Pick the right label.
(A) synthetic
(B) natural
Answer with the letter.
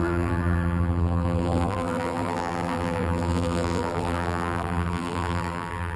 A